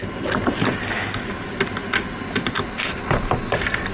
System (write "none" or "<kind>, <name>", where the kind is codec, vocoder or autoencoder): none